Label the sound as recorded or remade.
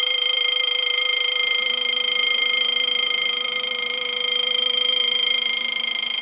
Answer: remade